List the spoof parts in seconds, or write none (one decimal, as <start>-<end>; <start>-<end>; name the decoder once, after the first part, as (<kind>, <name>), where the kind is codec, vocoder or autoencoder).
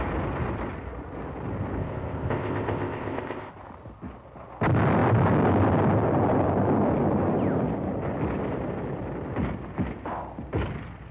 1.8-3.5 (codec, ZipCodec)